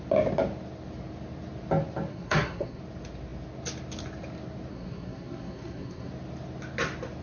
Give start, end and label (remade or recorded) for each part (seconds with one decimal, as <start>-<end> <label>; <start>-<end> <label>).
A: 0.0-2.1 recorded; 2.1-2.8 remade; 2.8-4.7 recorded; 4.7-6.1 remade; 6.1-7.2 recorded